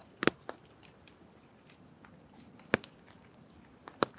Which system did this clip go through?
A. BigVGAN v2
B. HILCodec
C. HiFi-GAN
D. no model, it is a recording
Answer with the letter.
D